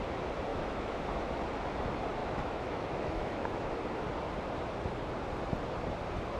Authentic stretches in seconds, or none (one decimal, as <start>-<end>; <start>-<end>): 0.0-0.5; 1.0-2.2; 3.7-6.4